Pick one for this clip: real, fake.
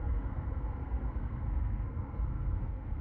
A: fake